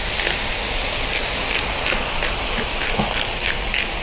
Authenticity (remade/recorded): recorded